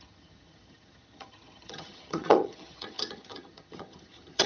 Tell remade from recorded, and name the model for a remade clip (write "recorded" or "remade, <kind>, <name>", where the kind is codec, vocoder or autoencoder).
remade, vocoder, HiFi-GAN